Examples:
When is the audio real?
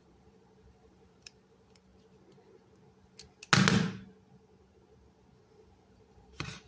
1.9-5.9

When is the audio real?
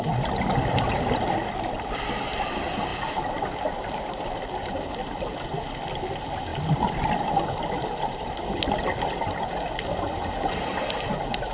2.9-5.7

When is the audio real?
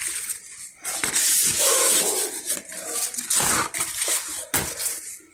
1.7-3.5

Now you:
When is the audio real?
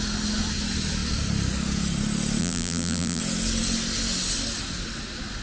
0.0-2.4; 3.2-5.4